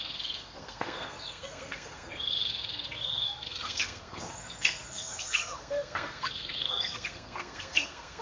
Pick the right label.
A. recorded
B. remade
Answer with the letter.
B